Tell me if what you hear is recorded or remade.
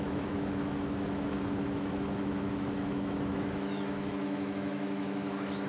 remade